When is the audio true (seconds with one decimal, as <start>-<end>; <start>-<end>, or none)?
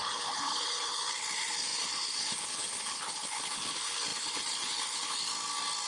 5.3-5.9